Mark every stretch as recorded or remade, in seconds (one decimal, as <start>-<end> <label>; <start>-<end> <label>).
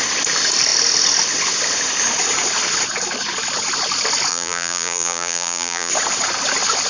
0.0-4.3 recorded; 4.3-5.9 remade; 5.9-6.9 recorded